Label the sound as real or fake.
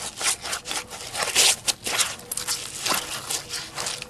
real